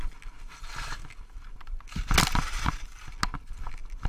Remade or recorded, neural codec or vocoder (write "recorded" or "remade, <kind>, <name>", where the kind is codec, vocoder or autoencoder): recorded